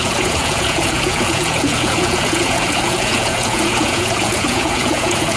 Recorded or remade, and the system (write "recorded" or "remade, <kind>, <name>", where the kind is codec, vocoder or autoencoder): remade, vocoder, Vocos